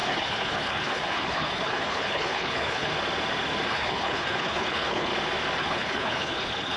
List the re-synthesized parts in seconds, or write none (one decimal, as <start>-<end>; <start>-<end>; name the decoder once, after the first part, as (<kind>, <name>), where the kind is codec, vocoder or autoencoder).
0.0-2.9 (codec, HILCodec); 3.7-5.1; 5.6-6.8